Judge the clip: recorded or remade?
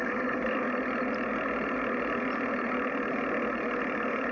recorded